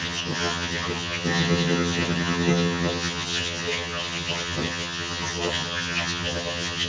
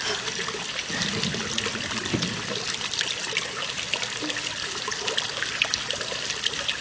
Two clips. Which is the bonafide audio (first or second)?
second